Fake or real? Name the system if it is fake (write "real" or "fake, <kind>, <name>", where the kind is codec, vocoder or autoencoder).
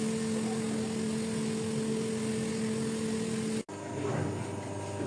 real